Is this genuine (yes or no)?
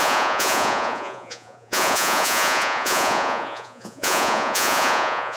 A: no